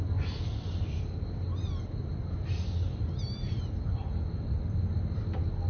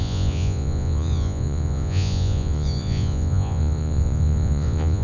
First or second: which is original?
first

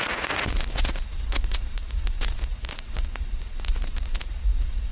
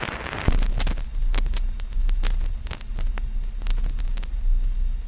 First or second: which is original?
second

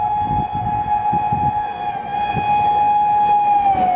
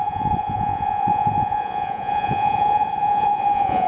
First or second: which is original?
first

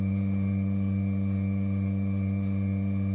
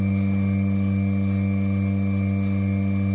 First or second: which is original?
second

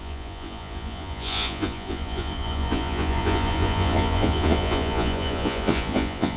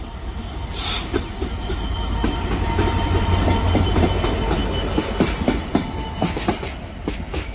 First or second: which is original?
second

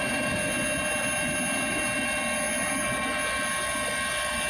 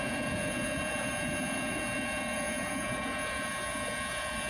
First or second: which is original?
first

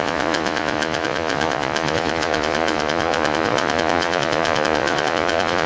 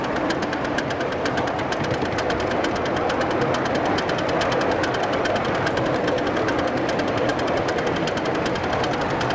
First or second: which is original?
second